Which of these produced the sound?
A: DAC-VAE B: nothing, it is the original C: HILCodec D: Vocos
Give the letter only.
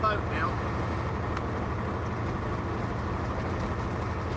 B